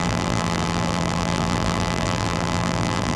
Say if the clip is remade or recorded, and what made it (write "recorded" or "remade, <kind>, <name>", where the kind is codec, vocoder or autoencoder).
remade, vocoder, BigVGAN v2